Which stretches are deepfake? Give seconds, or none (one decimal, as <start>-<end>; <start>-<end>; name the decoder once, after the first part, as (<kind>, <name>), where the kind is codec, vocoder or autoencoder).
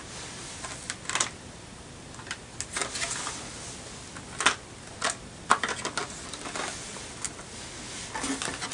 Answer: none